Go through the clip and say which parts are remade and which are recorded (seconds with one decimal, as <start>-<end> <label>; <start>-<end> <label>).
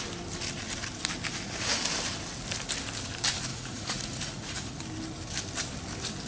0.0-1.3 recorded; 1.3-1.8 remade; 1.8-3.5 recorded; 3.5-4.8 remade; 4.8-6.3 recorded